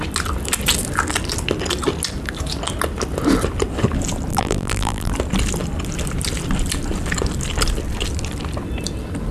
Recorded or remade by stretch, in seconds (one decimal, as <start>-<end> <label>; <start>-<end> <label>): 0.0-4.3 recorded; 4.3-5.1 remade; 5.1-9.3 recorded